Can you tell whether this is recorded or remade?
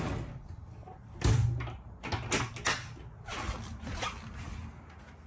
recorded